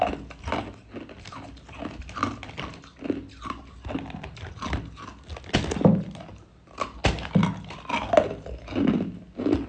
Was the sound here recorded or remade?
recorded